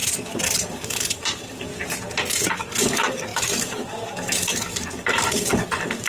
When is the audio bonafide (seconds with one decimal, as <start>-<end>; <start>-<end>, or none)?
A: 0.0-0.7; 1.7-2.5